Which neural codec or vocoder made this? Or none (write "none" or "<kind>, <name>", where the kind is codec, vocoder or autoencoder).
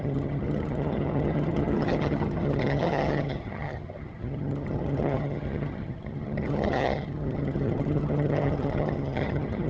vocoder, HiFi-GAN